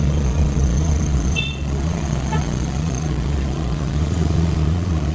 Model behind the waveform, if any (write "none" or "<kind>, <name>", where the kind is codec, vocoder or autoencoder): vocoder, Vocos